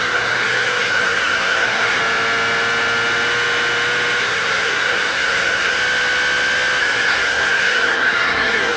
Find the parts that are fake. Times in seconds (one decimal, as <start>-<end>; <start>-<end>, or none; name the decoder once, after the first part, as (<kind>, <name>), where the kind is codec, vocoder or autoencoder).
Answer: 0.0-2.0 (codec, SNAC); 4.2-5.8; 6.8-8.8